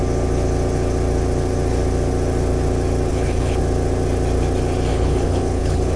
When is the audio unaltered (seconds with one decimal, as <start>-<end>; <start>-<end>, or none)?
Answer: 0.0-3.1; 3.6-4.9